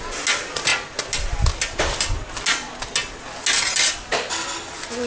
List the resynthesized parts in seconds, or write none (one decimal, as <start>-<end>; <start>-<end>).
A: none